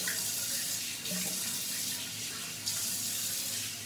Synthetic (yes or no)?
no